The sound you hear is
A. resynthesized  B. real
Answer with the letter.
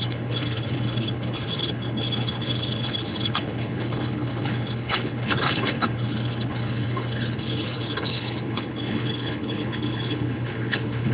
A